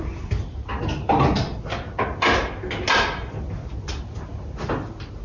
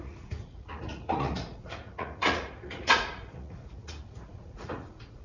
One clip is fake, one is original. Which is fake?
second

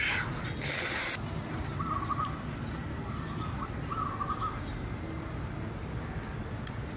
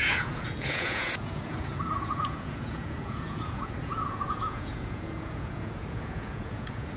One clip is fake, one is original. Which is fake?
second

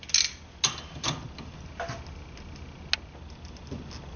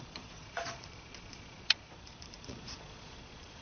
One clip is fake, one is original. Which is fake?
second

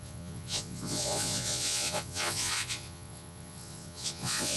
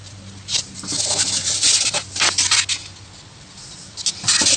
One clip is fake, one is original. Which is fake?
first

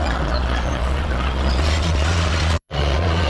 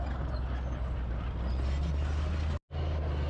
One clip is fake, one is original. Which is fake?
first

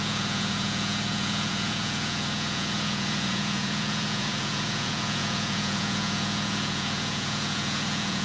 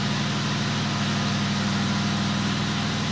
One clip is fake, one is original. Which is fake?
first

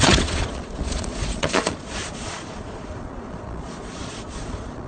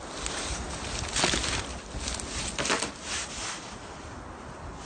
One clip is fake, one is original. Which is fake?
first